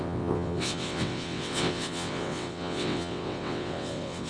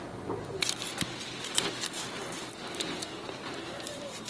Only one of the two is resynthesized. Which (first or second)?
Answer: first